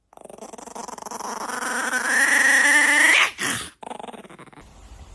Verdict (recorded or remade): recorded